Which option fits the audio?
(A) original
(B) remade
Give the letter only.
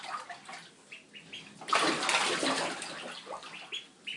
A